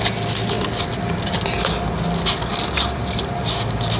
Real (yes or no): yes